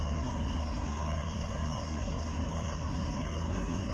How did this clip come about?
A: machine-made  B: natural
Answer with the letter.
A